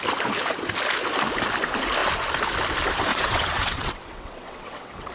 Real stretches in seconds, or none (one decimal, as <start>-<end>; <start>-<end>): 0.0-3.1